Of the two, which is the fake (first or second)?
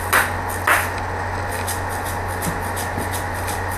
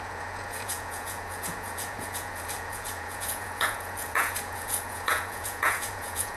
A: second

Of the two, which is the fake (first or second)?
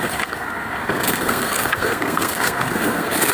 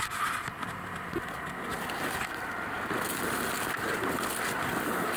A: first